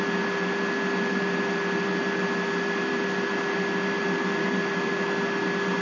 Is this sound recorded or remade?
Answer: recorded